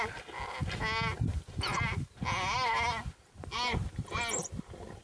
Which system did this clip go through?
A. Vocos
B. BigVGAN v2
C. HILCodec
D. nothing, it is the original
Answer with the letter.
D